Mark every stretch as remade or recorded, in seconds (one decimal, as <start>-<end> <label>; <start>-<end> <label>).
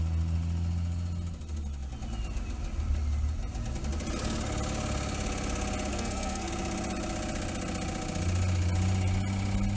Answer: 0.0-5.9 recorded; 5.9-6.5 remade; 6.5-9.8 recorded